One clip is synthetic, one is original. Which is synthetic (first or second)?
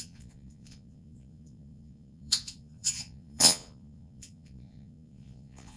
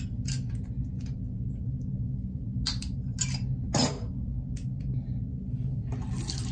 first